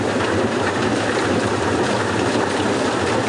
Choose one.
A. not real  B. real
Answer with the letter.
A